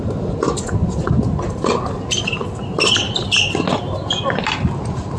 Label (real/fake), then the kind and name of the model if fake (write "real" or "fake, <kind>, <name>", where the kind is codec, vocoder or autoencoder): real